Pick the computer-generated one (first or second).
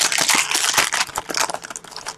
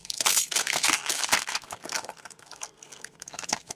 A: second